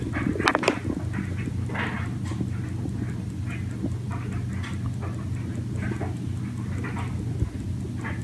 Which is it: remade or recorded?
recorded